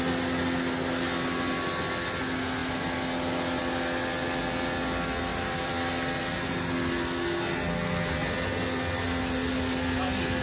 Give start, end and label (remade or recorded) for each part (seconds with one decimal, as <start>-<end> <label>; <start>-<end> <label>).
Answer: 0.0-5.3 recorded; 5.3-6.5 remade; 6.5-10.4 recorded